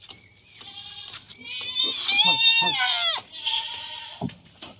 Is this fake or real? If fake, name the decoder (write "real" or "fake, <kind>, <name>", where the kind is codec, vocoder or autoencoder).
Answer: fake, vocoder, BigVGAN v2